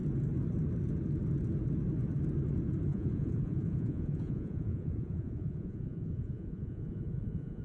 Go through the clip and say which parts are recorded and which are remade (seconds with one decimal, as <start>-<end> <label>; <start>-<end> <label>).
0.0-2.9 recorded; 2.9-7.6 remade